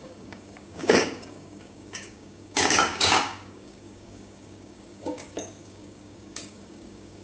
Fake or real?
fake